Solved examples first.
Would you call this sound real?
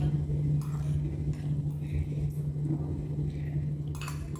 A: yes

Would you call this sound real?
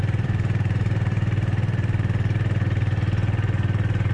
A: no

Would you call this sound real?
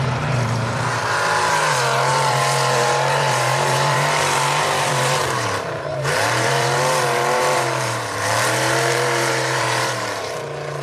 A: no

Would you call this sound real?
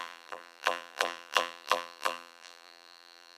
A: no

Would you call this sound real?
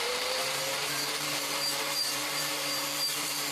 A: no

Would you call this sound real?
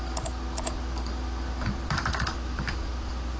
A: no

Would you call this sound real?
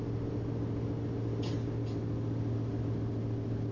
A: yes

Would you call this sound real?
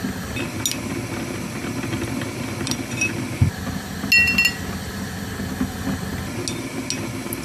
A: yes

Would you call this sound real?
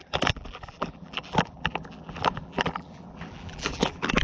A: no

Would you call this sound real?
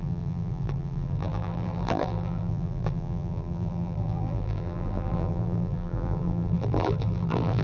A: no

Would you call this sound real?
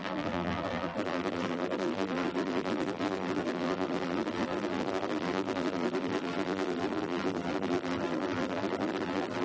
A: no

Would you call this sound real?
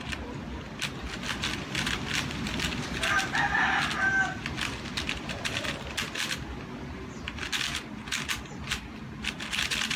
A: yes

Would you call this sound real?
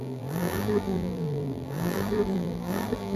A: no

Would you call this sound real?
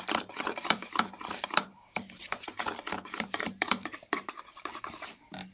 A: no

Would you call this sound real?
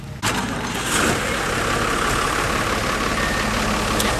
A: yes